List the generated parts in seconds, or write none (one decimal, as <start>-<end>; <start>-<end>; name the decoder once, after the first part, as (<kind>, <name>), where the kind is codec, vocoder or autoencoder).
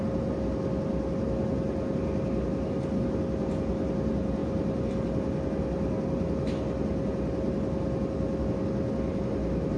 none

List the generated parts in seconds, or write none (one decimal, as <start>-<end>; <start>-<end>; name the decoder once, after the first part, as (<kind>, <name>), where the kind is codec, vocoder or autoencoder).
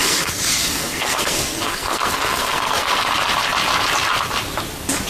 0.0-3.0 (codec, SNAC)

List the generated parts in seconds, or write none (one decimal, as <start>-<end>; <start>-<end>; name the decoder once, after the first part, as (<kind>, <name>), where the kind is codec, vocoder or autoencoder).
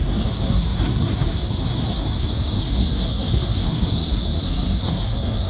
0.0-5.5 (codec, SNAC)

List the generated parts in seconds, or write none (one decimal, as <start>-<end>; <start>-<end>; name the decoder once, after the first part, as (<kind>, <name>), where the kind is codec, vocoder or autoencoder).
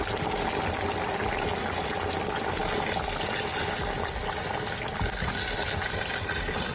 none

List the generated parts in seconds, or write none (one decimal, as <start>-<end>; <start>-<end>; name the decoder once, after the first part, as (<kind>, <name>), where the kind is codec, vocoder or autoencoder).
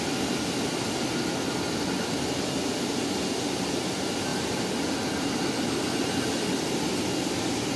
none